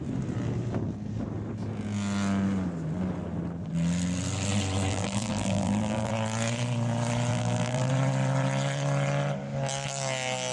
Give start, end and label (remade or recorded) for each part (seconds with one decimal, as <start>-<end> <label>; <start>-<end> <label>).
0.0-4.9 recorded; 4.9-6.1 remade; 6.1-7.3 recorded; 7.3-7.9 remade; 7.9-10.5 recorded